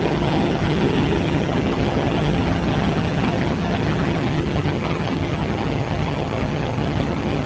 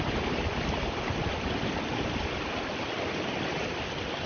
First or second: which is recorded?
second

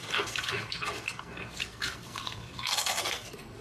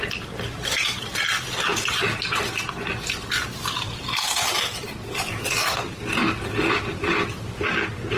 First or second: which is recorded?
second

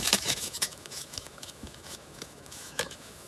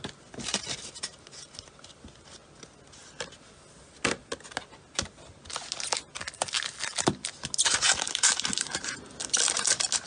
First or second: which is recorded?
second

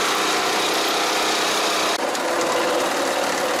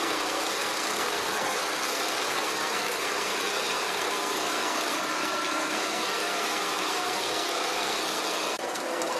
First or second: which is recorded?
first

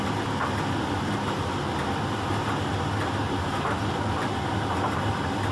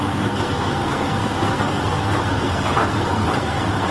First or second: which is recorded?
first